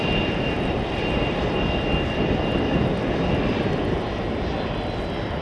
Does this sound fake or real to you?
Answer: real